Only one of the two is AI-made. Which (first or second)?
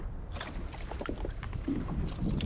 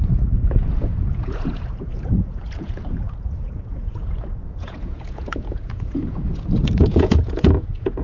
second